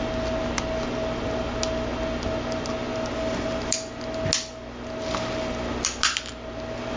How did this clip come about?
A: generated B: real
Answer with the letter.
B